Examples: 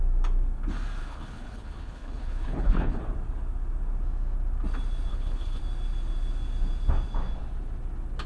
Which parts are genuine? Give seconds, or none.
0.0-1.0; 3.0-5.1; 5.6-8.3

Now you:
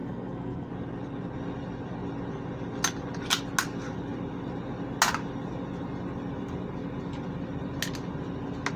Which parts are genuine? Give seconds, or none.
0.7-8.8

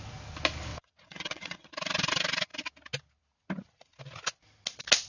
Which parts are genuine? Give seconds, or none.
0.0-0.7; 1.7-5.1

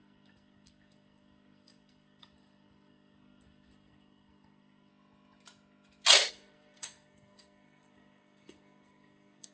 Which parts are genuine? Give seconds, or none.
4.9-6.3

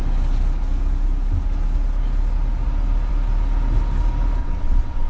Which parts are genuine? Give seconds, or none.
0.0-4.4